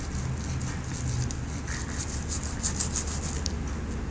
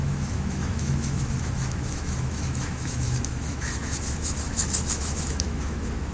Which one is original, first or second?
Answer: first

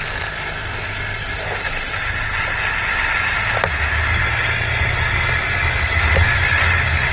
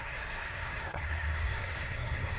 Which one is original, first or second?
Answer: first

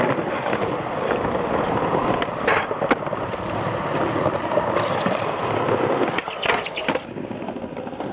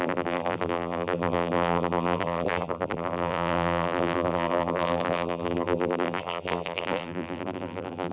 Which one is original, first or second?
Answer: first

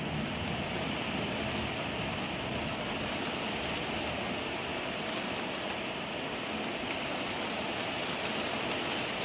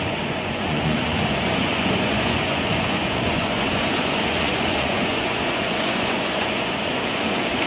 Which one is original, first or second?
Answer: first